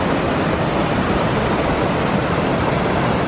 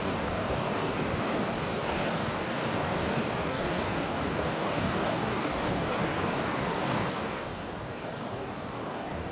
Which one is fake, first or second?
second